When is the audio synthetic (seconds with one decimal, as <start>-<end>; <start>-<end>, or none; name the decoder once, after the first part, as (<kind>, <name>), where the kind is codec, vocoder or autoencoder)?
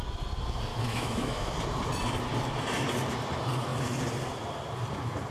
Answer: 0.7-1.5 (autoencoder, DAC-VAE)